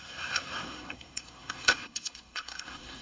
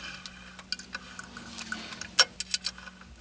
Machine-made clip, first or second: first